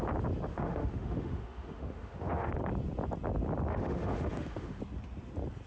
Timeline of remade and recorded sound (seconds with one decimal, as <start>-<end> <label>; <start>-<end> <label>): 0.0-0.5 recorded; 0.5-2.5 remade; 2.5-3.7 recorded; 3.7-4.8 remade; 4.8-5.7 recorded